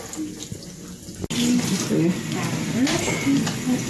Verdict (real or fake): real